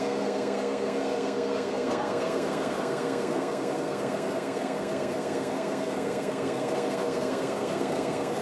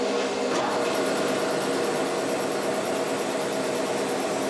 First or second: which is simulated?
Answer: first